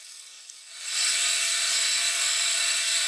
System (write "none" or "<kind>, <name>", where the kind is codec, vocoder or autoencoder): codec, SNAC